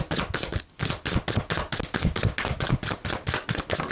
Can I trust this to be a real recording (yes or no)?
yes